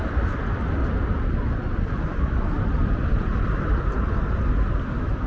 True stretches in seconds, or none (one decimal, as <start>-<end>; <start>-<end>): 0.8-1.9